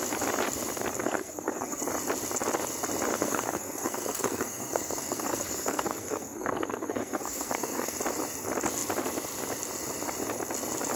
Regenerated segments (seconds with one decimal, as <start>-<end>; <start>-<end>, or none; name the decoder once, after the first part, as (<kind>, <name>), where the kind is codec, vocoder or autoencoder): 1.0-1.8 (codec, SNAC); 3.1-8.0